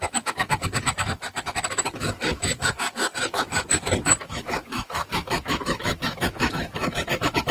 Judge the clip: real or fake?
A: fake